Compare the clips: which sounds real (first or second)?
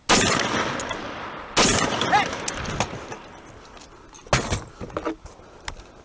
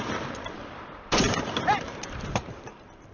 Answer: first